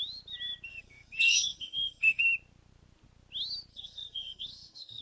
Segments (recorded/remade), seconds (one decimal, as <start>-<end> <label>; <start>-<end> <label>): 0.0-0.7 recorded; 0.7-2.2 remade; 2.2-3.7 recorded; 3.7-5.0 remade